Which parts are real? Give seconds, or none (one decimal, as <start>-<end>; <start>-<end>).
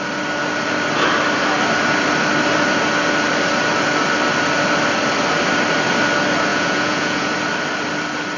0.0-6.5; 7.3-8.4